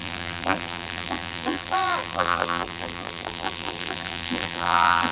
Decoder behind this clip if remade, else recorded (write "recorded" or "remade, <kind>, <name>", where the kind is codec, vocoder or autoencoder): remade, vocoder, BigVGAN v2